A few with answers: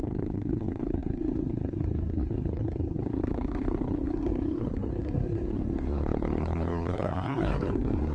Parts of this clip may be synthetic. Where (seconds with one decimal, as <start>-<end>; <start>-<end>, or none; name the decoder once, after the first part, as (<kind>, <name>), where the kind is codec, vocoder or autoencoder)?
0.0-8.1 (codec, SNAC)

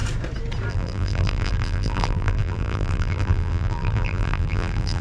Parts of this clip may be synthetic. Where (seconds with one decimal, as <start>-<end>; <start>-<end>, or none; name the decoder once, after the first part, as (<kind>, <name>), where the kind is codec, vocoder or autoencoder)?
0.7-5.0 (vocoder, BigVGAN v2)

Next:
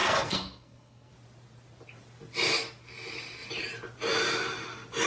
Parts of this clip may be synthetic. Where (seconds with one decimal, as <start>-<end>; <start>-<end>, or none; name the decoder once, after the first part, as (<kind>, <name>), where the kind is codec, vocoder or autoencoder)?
0.0-1.1 (codec, SNAC)

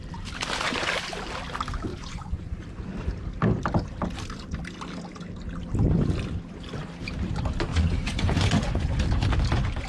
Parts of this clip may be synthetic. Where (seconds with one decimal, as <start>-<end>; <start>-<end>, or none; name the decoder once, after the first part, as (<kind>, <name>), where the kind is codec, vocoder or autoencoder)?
1.9-2.5 (vocoder, Vocos); 7.7-9.0